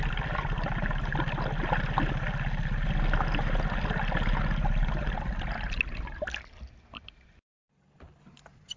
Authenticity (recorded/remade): recorded